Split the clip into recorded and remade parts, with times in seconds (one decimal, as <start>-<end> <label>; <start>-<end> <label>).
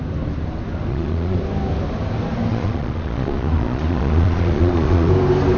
0.0-0.9 recorded; 0.9-1.4 remade; 1.4-2.5 recorded; 2.5-5.1 remade; 5.1-5.6 recorded